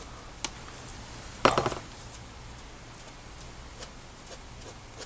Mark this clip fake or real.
real